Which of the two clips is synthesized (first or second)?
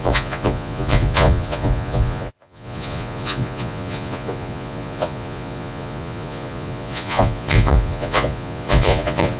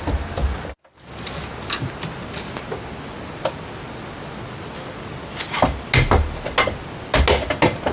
first